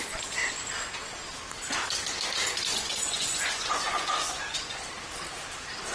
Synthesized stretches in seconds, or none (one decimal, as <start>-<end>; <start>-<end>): 2.7-4.8